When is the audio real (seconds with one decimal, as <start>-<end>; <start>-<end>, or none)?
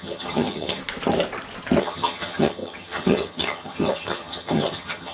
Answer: 0.8-1.8